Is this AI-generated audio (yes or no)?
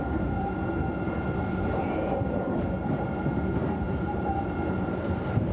no